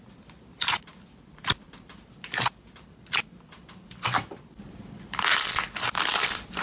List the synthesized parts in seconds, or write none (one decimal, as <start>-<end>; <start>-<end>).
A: 1.3-5.3